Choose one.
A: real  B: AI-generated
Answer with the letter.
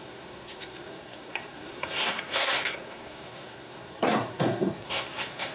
B